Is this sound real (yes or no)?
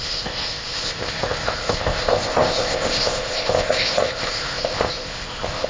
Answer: no